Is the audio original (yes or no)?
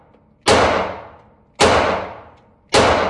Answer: yes